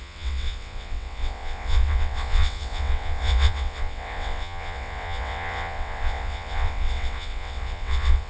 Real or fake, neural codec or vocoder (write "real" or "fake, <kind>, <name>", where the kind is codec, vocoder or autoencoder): fake, vocoder, WaveNeXt